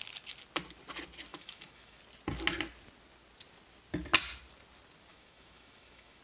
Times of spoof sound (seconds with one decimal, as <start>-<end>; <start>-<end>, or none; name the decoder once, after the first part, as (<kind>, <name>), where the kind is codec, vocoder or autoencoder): 1.3-2.0 (autoencoder, DAC-VAE); 5.1-6.2